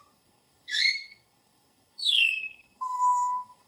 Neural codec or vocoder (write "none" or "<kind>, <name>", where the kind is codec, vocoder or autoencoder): codec, SNAC